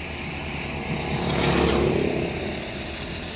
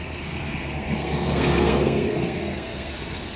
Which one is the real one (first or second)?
first